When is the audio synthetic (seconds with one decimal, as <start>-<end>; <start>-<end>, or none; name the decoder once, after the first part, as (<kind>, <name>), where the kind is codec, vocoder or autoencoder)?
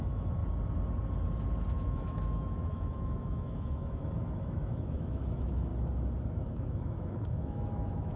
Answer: 0.0-0.4 (autoencoder, DAC-VAE); 1.7-5.7; 6.3-8.2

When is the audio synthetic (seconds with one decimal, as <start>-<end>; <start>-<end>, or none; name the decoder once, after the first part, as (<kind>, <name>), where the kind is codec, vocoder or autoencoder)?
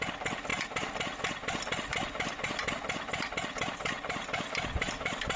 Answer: none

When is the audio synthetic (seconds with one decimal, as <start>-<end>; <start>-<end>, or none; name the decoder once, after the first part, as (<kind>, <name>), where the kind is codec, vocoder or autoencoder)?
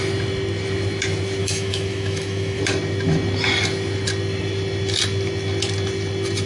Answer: 1.4-2.6 (autoencoder, DAC-VAE)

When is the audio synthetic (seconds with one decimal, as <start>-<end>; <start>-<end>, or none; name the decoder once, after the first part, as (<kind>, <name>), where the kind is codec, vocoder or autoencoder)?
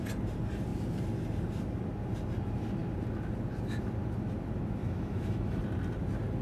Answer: 4.8-5.6 (autoencoder, DAC-VAE)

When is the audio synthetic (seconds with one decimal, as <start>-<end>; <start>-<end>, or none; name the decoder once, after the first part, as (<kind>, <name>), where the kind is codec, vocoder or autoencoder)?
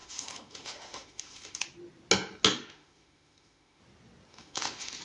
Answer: 0.0-1.6 (autoencoder, DAC-VAE); 2.5-3.8; 4.3-5.0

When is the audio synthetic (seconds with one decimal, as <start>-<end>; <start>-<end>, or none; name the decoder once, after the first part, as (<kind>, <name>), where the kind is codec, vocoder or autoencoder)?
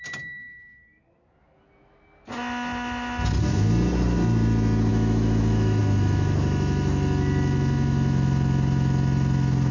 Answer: 4.9-5.8 (autoencoder, DAC-VAE)